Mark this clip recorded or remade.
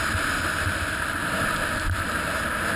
recorded